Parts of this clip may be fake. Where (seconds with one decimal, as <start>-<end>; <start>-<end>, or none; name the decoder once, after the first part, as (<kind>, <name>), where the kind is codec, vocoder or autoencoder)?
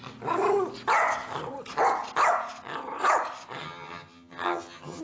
3.6-5.0 (vocoder, HiFi-GAN)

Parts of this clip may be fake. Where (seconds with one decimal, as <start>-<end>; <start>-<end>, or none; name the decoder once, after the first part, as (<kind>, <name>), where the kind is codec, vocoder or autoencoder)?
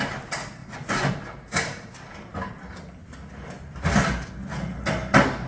0.6-1.1 (vocoder, Vocos)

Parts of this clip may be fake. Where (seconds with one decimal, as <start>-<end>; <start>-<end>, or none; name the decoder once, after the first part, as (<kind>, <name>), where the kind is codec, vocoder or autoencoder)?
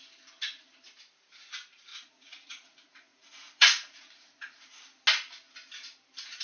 1.9-4.6 (vocoder, Vocos)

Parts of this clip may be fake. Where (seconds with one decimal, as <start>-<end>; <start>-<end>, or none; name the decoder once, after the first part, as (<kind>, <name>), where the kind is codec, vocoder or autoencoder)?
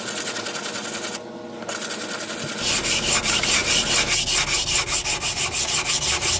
none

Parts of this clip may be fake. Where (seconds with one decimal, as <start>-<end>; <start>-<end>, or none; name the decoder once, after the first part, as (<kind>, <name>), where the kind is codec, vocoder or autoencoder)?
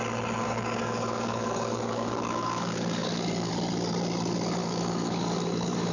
0.4-3.5 (codec, DAC); 4.6-5.9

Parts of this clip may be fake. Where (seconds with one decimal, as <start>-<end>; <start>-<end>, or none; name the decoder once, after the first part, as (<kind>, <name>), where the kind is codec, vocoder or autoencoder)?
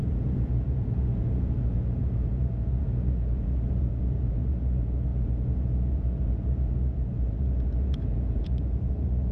0.0-9.3 (vocoder, Vocos)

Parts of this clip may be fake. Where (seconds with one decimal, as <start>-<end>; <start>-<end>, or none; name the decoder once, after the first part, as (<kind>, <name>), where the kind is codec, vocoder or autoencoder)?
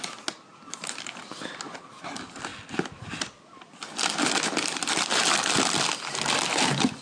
0.5-1.9 (vocoder, BigVGAN v2)